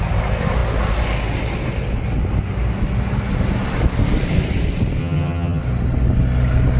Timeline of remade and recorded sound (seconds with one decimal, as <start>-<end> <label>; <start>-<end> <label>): 0.0-5.0 recorded; 5.0-5.6 remade; 5.6-6.8 recorded